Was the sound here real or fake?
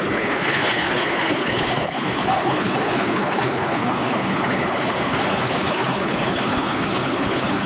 fake